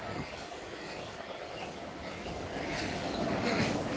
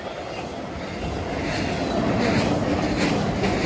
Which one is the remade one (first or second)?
first